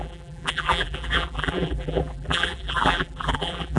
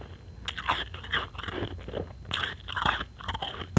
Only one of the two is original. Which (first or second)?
second